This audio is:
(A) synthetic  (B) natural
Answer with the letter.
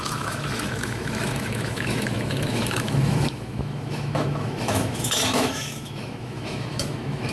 A